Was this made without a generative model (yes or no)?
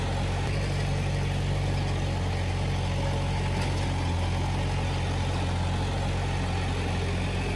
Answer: yes